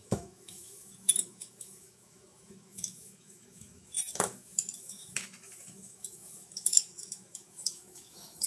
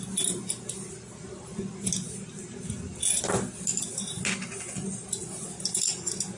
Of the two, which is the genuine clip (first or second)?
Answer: second